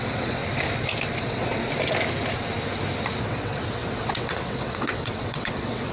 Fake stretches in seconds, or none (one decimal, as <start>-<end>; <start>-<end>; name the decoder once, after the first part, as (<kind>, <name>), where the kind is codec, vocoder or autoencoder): 0.0-0.4 (vocoder, WaveNeXt); 1.2-1.6; 3.2-5.9